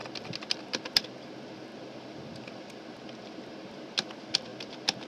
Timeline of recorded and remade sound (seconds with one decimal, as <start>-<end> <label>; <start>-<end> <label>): 0.0-5.1 recorded

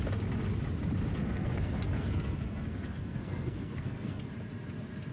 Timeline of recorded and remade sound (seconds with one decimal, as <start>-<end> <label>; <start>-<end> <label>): 0.0-1.1 recorded; 1.1-4.2 remade; 4.2-5.1 recorded

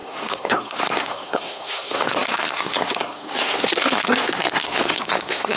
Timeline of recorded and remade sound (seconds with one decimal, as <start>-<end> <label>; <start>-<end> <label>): 0.0-5.6 remade

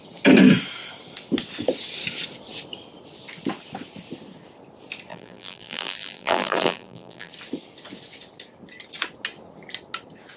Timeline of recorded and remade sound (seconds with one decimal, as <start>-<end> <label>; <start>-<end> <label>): 0.0-5.1 recorded; 5.1-7.3 remade; 7.3-10.4 recorded

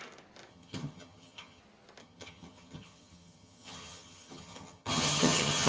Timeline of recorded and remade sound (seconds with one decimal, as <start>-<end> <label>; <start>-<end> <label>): 0.0-0.5 recorded; 0.5-1.6 remade; 1.6-2.0 recorded; 2.0-5.7 remade

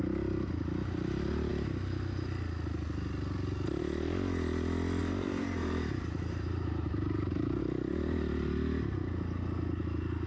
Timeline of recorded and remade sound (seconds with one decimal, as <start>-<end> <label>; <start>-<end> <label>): 0.0-5.0 recorded; 5.0-7.6 remade; 7.6-10.3 recorded